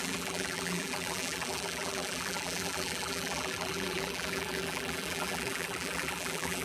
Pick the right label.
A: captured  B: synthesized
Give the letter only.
B